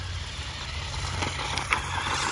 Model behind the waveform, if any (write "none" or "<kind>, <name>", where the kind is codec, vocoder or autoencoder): none